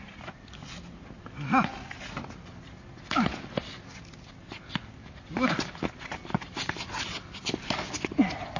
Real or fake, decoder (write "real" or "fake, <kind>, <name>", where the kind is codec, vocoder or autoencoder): real